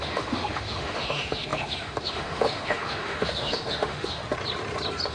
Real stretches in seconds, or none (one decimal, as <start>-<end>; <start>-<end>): 4.2-5.1